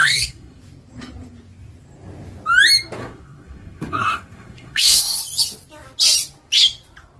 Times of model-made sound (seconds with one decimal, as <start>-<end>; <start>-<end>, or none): 0.0-0.6; 3.0-5.2